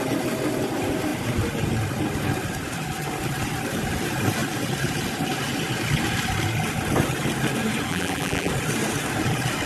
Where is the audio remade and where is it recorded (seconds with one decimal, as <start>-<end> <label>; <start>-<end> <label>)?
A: 0.0-7.9 recorded; 7.9-8.5 remade; 8.5-9.7 recorded